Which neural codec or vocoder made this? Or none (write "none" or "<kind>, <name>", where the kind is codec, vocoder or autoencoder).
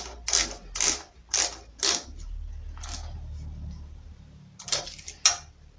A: none